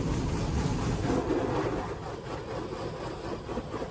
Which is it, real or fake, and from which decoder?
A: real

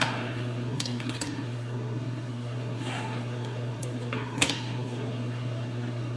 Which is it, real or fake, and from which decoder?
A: fake, codec, SNAC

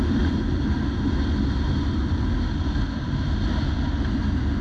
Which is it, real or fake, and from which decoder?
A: real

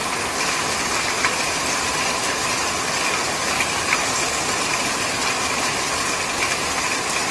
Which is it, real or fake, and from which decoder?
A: real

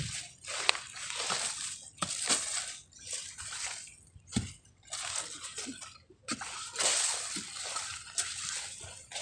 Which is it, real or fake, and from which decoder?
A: real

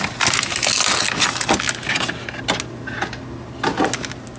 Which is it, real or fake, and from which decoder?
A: real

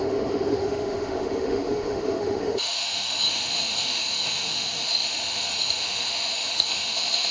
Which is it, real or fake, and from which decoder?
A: fake, autoencoder, DAC-VAE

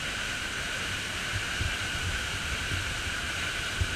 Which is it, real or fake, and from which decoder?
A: fake, vocoder, BigVGAN v2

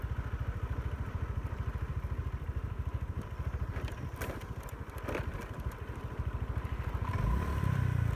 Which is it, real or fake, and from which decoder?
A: fake, vocoder, BigVGAN v2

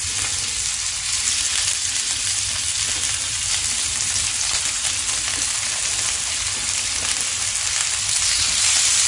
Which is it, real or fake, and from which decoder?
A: real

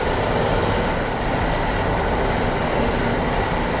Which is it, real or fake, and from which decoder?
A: real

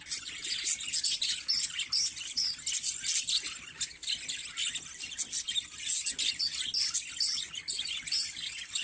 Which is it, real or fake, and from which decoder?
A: real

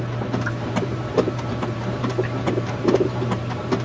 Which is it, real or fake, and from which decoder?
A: fake, vocoder, BigVGAN v2